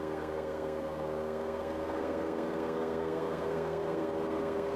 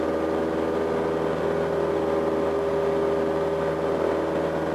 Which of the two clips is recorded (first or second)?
second